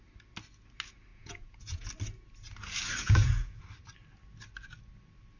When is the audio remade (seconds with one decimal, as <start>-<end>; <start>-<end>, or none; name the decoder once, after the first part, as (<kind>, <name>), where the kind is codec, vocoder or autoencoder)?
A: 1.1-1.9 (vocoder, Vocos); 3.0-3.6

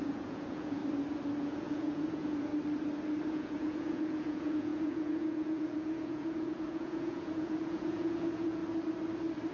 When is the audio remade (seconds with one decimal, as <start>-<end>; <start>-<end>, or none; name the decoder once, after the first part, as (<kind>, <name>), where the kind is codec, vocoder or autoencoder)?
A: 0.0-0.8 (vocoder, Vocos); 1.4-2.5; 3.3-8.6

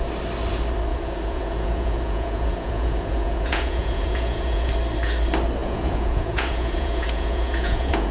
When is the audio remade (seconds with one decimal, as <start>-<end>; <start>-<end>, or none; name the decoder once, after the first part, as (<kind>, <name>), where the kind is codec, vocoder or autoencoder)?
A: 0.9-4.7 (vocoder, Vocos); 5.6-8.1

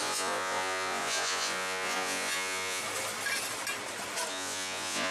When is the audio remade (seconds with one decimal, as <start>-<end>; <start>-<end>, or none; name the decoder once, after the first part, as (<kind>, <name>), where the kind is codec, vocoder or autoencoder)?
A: 0.0-2.8 (vocoder, Vocos); 4.3-5.1

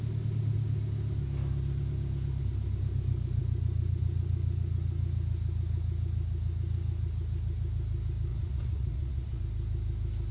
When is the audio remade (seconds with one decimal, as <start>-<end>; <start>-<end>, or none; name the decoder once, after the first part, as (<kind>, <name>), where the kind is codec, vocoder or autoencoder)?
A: 8.3-9.4 (vocoder, Vocos)

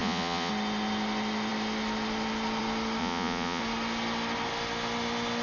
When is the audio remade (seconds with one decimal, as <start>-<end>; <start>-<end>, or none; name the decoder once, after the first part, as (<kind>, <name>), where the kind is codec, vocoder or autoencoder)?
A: 0.0-0.5 (vocoder, Vocos); 3.0-3.6

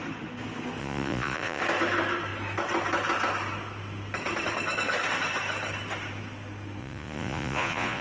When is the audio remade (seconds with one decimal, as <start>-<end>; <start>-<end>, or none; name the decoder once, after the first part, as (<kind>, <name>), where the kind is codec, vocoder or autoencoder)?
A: 0.8-1.6 (vocoder, Vocos); 6.8-8.0